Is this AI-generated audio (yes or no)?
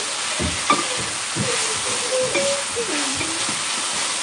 no